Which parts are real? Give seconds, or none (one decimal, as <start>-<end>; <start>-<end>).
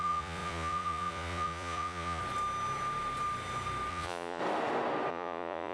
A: 2.2-3.9; 4.4-5.1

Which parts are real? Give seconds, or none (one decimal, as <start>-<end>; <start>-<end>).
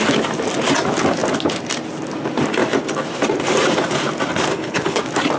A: 0.0-4.5; 5.0-5.4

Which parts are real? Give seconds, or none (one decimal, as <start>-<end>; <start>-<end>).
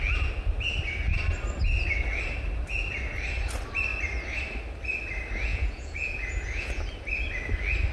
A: 0.0-5.5; 6.8-7.9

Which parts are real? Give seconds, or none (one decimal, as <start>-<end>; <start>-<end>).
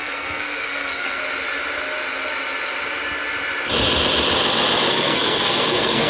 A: 1.2-4.9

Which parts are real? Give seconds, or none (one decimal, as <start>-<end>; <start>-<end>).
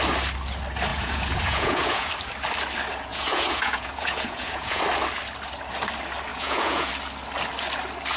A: 0.0-0.9; 2.1-3.1; 4.8-6.3; 6.9-8.2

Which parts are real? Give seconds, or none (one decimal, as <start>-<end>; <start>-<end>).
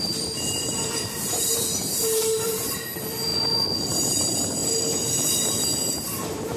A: 3.3-3.9; 4.6-5.6